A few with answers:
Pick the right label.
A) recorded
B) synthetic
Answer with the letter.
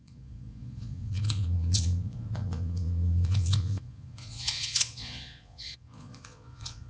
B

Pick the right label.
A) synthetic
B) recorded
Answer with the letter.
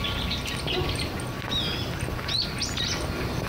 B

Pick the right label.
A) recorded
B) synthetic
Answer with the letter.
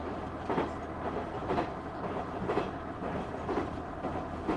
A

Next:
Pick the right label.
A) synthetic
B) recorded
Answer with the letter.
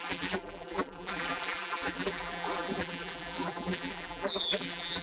A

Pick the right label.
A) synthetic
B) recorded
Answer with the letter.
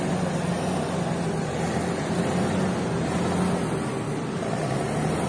B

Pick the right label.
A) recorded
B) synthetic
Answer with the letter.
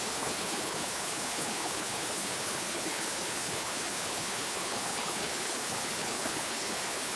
B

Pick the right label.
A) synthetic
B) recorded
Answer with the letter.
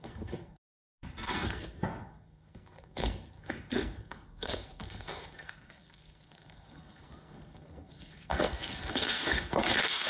A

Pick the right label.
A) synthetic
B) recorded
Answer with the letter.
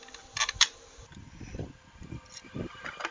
A